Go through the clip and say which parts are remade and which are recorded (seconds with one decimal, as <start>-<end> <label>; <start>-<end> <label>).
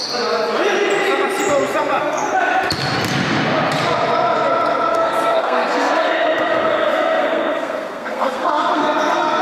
0.0-2.0 recorded; 2.0-2.5 remade; 2.5-4.9 recorded; 4.9-9.4 remade